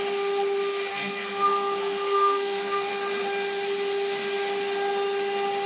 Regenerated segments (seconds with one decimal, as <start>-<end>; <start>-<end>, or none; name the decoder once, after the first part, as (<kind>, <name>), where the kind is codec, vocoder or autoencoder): 0.9-2.9 (codec, SNAC)